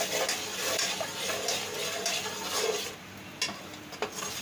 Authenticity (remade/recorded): recorded